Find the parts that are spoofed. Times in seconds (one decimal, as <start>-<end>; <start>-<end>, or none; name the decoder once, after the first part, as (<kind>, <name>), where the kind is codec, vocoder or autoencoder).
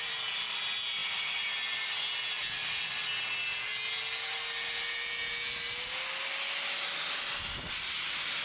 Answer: none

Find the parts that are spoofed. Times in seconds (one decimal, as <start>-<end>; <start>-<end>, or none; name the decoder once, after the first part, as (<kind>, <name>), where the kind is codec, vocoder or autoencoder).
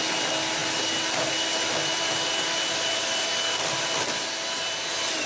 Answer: 0.6-2.1 (vocoder, BigVGAN v2)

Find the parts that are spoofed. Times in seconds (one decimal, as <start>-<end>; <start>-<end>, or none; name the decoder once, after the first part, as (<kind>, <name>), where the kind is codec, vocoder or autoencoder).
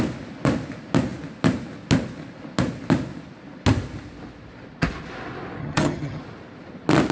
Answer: 5.6-6.2 (vocoder, HiFi-GAN)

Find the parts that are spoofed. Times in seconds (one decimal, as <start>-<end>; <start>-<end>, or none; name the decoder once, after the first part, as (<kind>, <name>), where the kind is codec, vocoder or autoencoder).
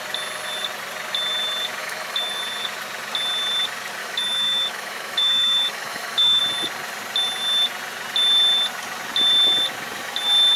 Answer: 1.8-2.4 (autoencoder, DAC-VAE); 4.0-6.4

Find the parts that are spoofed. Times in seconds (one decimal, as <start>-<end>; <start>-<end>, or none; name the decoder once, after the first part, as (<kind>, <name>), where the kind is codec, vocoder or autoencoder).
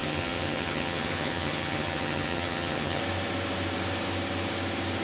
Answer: 0.0-3.0 (vocoder, HiFi-GAN)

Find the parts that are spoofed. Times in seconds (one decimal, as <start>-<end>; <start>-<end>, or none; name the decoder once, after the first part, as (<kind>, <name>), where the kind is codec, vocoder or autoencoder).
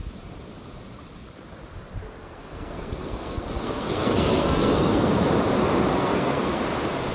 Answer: 2.2-5.2 (codec, SNAC); 5.9-6.6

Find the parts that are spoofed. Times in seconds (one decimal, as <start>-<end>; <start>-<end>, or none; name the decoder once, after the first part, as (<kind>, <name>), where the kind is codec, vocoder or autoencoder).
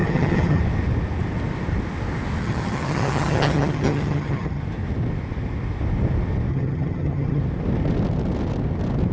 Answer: 0.0-0.6 (vocoder, HiFi-GAN); 2.4-4.6; 6.5-7.4